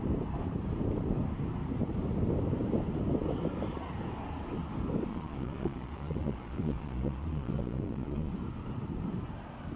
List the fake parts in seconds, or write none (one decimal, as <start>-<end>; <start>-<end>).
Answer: 5.1-8.3